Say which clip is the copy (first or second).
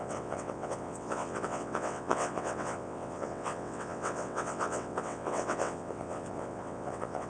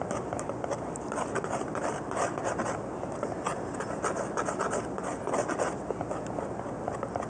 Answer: first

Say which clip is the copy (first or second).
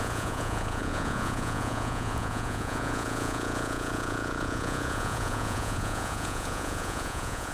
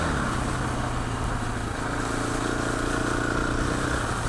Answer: first